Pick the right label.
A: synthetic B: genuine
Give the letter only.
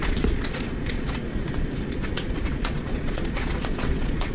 A